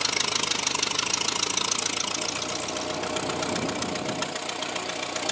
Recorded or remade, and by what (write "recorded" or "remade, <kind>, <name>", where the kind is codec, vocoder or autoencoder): recorded